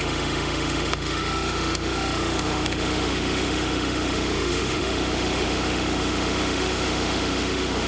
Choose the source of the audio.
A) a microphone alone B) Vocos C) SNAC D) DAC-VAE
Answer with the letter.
D